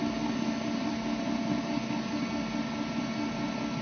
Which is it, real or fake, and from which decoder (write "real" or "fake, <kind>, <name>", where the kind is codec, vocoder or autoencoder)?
real